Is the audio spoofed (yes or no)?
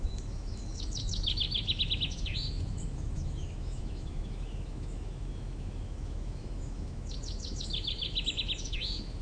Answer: yes